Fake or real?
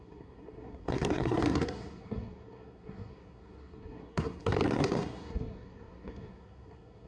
fake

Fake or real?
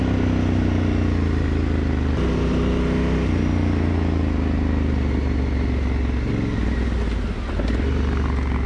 real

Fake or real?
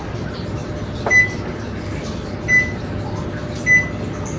real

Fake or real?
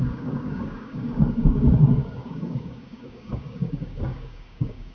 fake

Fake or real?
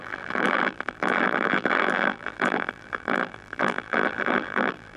fake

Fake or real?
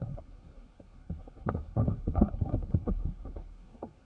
fake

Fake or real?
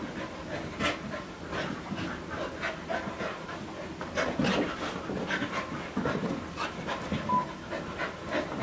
real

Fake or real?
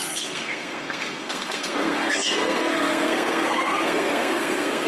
fake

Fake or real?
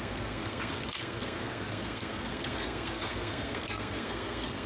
fake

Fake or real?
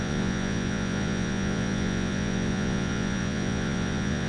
fake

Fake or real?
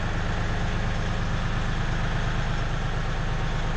real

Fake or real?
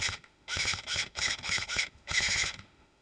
fake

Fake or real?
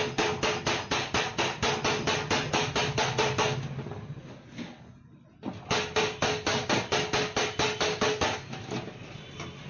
real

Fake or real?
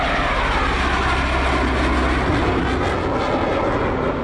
real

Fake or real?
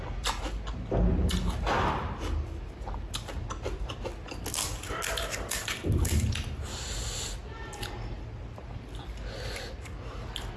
real